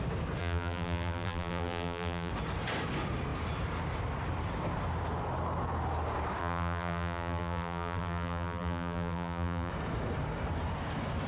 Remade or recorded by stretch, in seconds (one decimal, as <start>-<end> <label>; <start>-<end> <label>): 0.0-0.4 recorded; 0.4-2.3 remade; 2.3-6.4 recorded; 6.4-9.7 remade; 9.7-11.3 recorded

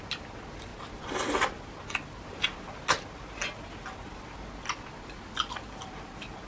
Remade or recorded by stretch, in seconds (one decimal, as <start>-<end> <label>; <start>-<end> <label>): 0.0-6.5 recorded

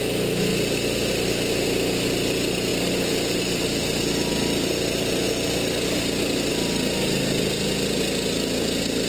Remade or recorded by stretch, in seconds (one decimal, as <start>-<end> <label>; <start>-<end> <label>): 0.0-2.7 recorded; 2.7-6.5 remade; 6.5-9.1 recorded

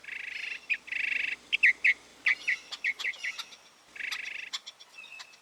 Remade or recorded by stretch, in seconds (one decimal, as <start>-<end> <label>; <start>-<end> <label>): 0.0-2.1 recorded; 2.1-3.2 remade; 3.2-5.4 recorded

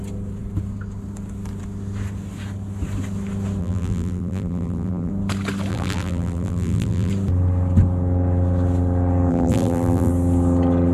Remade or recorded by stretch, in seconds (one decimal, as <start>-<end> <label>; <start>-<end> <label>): 0.0-3.6 recorded; 3.6-5.1 remade; 5.1-5.7 recorded; 5.7-7.1 remade; 7.1-9.3 recorded; 9.3-10.1 remade; 10.1-10.9 recorded

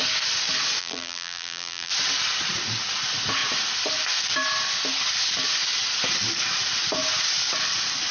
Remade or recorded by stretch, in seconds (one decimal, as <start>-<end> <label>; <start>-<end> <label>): 0.0-0.8 recorded; 0.8-1.9 remade; 1.9-8.1 recorded

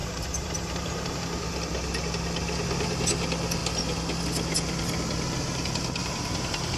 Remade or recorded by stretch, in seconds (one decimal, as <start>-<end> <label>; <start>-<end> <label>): 0.0-1.2 remade; 1.2-6.0 recorded; 6.0-6.8 remade

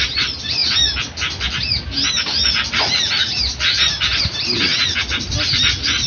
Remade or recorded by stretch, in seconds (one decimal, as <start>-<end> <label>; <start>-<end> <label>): 0.0-0.6 remade; 0.6-3.3 recorded; 3.3-3.7 remade; 3.7-4.2 recorded; 4.2-4.7 remade; 4.7-5.2 recorded; 5.2-6.1 remade